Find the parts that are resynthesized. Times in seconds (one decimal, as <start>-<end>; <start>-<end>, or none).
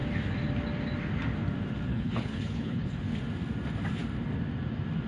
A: 1.9-3.0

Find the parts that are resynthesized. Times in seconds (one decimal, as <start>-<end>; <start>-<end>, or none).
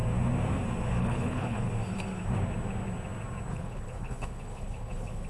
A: 1.0-1.7; 3.5-5.3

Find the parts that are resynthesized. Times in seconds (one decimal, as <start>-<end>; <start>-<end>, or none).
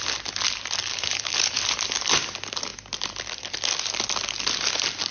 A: 0.9-1.6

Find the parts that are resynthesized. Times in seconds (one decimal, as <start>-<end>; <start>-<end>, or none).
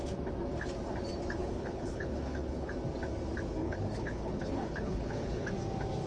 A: 1.4-2.7; 3.6-5.5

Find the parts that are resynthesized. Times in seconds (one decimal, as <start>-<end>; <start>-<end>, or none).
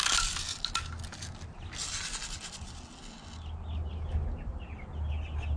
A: none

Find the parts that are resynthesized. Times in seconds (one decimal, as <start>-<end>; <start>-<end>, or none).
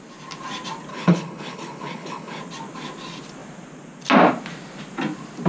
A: 0.9-2.4